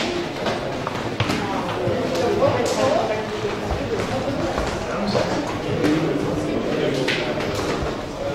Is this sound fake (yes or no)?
no